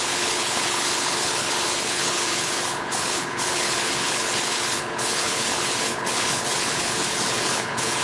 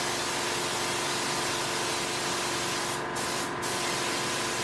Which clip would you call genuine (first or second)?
second